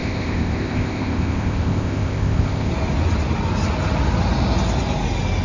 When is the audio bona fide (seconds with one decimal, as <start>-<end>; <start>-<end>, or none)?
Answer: 2.7-5.4